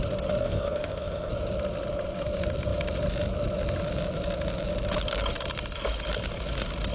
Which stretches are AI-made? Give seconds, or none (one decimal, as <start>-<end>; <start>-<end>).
0.4-1.3